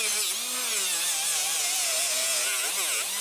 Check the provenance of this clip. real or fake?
real